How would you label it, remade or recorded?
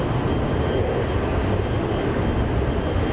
recorded